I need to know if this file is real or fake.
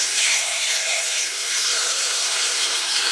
fake